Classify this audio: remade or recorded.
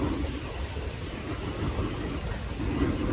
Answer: recorded